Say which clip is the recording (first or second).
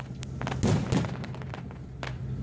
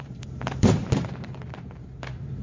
first